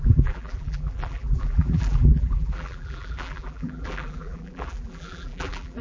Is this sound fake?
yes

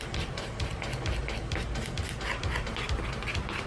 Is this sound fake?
no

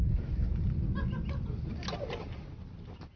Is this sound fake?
no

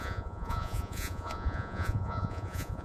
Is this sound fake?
yes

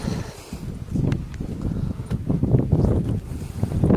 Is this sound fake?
no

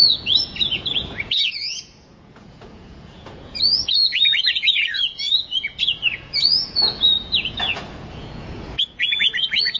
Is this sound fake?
yes